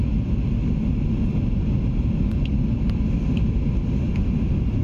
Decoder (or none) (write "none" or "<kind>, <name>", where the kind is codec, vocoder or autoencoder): none